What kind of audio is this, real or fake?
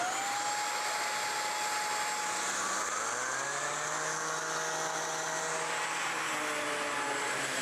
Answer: real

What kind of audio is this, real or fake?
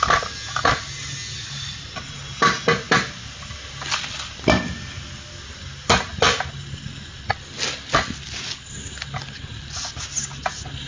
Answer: real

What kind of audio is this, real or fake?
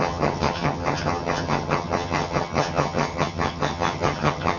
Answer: fake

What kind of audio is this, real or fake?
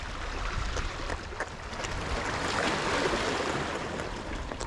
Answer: real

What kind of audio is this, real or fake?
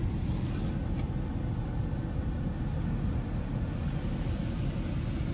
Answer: real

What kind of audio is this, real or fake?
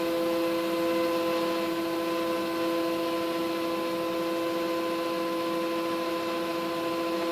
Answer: real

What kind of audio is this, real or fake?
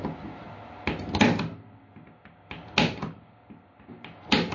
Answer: real